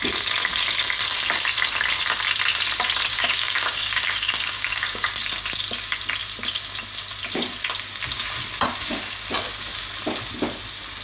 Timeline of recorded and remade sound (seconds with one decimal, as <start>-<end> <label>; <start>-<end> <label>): 0.0-3.1 recorded; 3.1-5.1 remade; 5.1-11.0 recorded